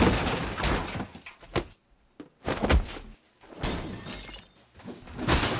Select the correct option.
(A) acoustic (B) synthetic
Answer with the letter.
A